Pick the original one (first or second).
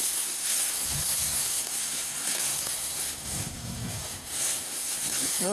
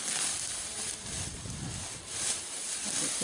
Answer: second